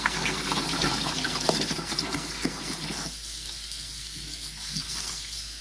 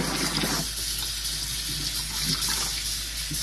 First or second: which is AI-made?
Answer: first